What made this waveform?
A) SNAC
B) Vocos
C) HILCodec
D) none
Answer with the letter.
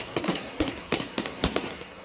A